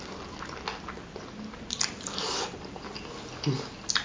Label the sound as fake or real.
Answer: real